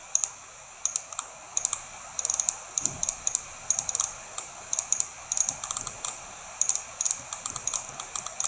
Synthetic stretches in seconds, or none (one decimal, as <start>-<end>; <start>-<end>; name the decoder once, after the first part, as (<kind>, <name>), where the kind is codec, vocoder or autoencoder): none